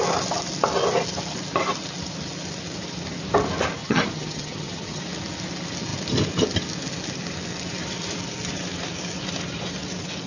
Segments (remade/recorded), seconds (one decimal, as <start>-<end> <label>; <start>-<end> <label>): 0.0-3.8 recorded; 3.8-5.0 remade; 5.0-10.3 recorded